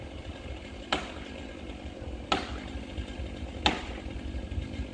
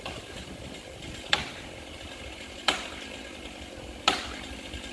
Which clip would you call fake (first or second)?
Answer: second